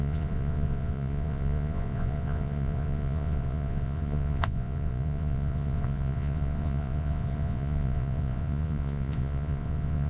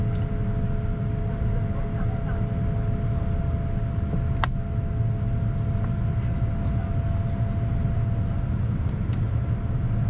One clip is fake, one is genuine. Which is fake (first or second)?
first